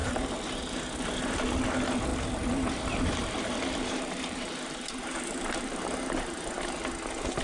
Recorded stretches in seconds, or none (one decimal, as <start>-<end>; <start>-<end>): 0.6-2.1; 6.5-7.4